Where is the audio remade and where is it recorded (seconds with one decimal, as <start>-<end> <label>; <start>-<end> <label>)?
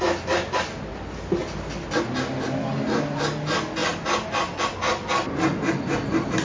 0.0-6.4 recorded